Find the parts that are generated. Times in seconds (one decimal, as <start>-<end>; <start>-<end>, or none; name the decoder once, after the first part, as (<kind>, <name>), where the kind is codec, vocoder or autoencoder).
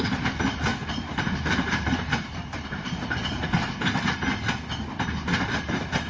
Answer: 0.7-3.0 (vocoder, BigVGAN v2)